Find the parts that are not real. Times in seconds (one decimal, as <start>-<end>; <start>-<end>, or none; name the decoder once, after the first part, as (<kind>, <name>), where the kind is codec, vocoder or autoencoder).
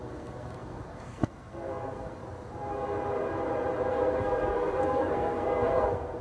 0.0-2.2 (codec, SNAC); 3.9-6.2